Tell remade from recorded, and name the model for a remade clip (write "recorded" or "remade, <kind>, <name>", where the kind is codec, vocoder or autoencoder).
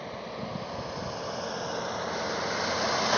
recorded